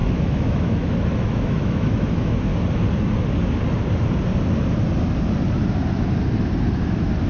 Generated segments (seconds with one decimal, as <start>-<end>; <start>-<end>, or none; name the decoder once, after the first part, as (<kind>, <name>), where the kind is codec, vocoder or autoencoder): 0.0-2.5 (autoencoder, DAC-VAE)